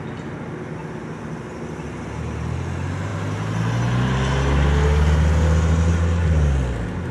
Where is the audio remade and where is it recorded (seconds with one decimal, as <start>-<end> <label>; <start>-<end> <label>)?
0.0-7.1 recorded